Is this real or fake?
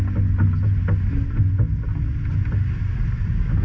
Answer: real